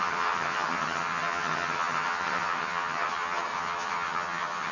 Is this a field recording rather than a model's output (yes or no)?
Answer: no